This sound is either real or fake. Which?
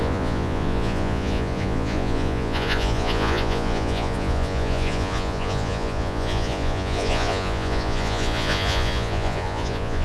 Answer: fake